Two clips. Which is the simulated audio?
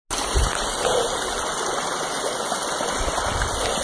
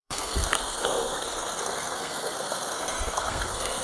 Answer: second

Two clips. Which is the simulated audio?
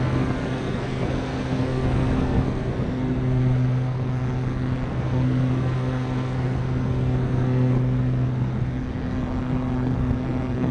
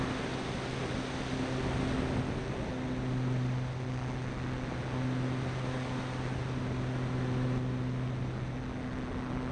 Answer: first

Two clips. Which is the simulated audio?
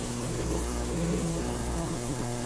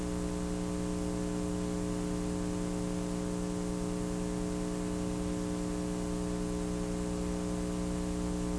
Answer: first